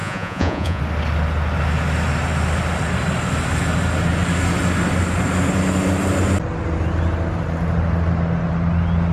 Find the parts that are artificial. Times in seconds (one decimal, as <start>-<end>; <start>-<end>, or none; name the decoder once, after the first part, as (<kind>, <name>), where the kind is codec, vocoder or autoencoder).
0.0-0.8 (vocoder, Vocos)